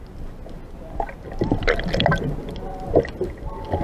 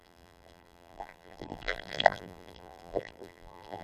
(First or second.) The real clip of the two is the first